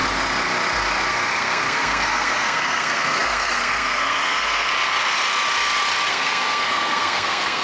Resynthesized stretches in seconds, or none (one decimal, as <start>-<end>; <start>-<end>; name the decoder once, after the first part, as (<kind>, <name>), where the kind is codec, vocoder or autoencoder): 1.1-4.7 (codec, SNAC); 6.1-7.6